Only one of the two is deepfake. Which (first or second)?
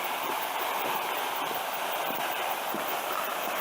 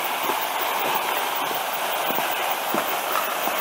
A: first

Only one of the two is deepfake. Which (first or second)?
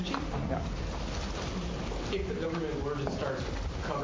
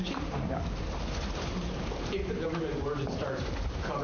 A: second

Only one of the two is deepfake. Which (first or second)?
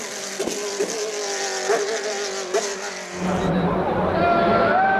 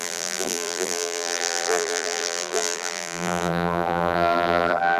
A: second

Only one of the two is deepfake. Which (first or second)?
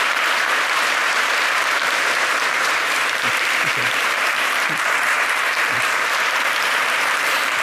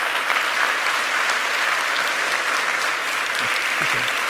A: first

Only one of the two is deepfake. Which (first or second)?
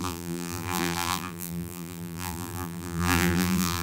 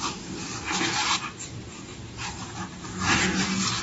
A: first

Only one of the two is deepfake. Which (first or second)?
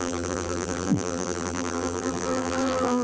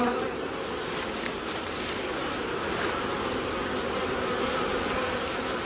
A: first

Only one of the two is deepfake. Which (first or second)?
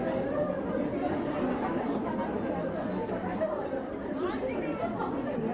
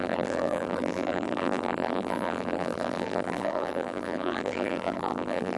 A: second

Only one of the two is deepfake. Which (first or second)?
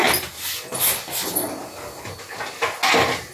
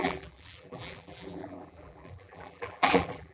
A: second